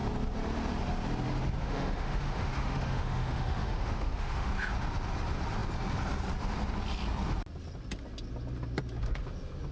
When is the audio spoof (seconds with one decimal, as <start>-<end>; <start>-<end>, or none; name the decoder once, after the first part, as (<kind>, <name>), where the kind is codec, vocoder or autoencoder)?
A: 1.6-4.5 (autoencoder, DAC-VAE)